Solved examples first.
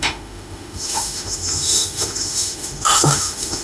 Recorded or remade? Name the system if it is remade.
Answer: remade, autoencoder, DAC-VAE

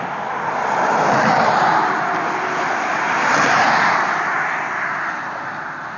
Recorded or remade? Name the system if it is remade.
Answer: recorded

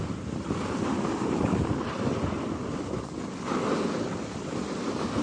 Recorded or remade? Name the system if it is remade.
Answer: recorded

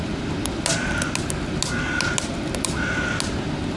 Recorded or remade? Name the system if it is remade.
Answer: recorded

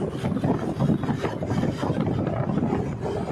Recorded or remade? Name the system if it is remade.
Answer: recorded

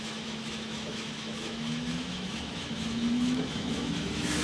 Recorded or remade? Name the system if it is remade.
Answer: remade, autoencoder, DAC-VAE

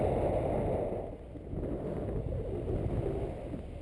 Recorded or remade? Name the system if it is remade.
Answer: recorded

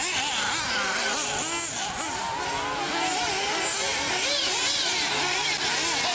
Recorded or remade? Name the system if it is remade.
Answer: recorded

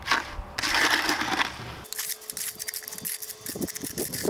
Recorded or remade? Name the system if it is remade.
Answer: recorded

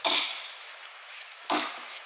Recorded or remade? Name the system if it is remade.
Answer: remade, autoencoder, DAC-VAE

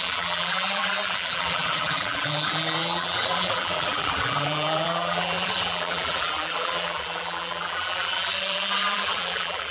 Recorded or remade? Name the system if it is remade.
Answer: remade, vocoder, BigVGAN v2